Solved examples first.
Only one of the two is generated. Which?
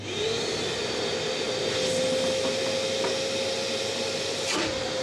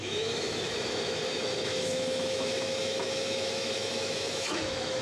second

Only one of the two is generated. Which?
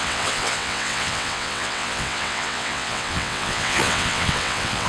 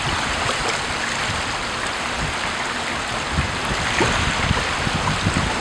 first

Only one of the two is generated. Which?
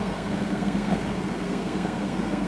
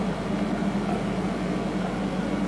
first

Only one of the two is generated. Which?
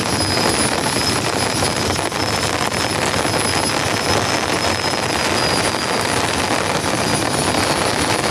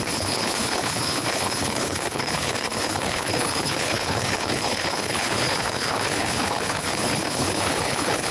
second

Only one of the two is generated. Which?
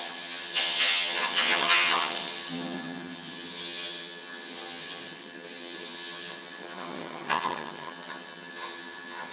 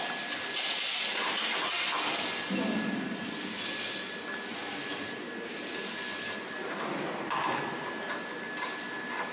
first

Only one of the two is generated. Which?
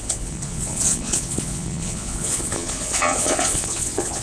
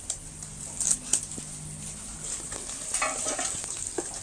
first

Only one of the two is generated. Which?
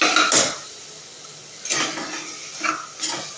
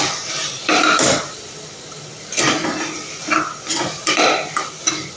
second